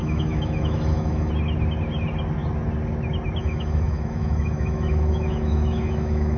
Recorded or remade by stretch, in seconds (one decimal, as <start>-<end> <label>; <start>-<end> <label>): 0.0-1.3 remade; 1.3-3.4 recorded; 3.4-6.4 remade